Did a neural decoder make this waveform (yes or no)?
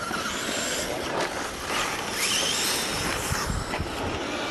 no